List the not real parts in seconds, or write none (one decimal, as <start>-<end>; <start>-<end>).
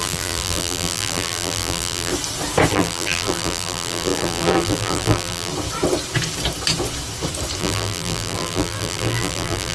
0.0-2.1; 2.7-5.5; 7.6-9.7